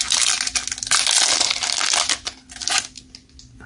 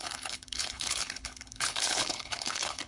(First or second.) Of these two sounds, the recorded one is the first